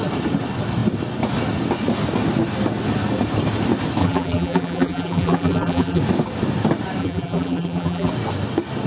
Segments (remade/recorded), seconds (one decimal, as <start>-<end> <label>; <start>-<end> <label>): 0.0-4.0 recorded; 4.0-6.0 remade; 6.0-7.0 recorded; 7.0-8.1 remade; 8.1-8.9 recorded